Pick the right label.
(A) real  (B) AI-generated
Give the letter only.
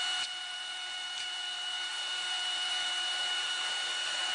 B